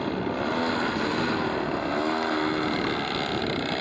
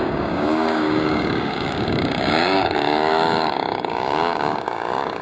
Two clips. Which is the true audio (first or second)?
first